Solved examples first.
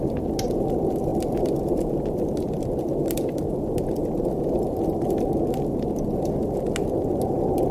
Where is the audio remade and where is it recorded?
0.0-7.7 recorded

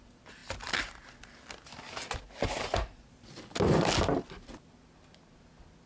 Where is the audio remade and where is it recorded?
0.0-5.9 recorded

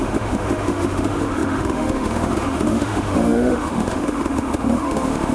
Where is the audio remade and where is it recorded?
0.0-5.3 remade

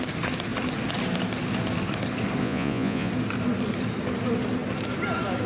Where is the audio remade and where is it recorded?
0.0-2.4 recorded; 2.4-3.1 remade; 3.1-5.5 recorded

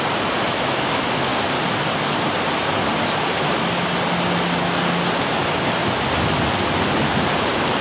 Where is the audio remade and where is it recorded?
0.0-7.8 recorded